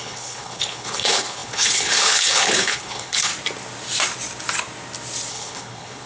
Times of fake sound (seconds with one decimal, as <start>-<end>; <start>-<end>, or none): 0.0-3.3; 5.3-6.1